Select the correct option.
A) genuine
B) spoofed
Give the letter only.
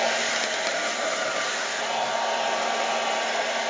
A